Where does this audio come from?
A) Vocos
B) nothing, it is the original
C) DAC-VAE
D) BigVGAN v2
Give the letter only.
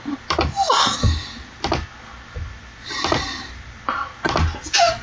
B